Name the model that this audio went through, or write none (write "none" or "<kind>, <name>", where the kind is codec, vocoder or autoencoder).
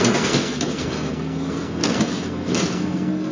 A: codec, SNAC